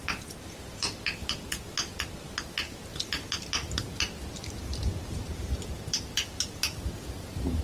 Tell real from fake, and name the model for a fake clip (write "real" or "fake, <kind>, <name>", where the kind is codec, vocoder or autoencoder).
real